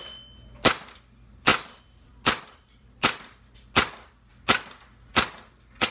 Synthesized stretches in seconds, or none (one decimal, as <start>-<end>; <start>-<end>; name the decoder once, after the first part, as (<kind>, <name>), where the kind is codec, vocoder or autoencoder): 1.5-3.4 (vocoder, BigVGAN v2)